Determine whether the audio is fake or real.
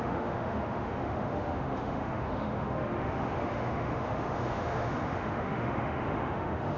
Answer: fake